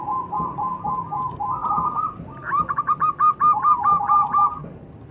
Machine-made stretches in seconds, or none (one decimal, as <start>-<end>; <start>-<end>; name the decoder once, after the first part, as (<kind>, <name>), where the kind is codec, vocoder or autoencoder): none